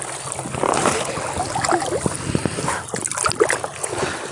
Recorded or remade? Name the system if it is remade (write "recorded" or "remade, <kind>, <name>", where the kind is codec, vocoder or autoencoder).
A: recorded